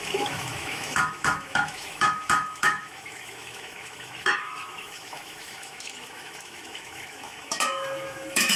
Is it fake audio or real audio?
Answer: fake